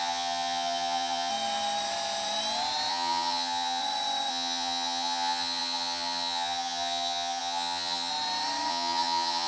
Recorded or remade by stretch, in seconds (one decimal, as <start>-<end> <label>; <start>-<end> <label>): 0.0-1.3 remade; 1.3-2.9 recorded; 2.9-3.8 remade; 3.8-4.3 recorded; 4.3-8.1 remade; 8.1-8.7 recorded; 8.7-9.5 remade